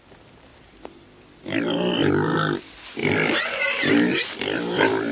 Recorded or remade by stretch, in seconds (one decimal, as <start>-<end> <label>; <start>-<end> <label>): 0.0-0.5 recorded; 0.5-1.9 remade; 1.9-3.0 recorded; 3.0-5.1 remade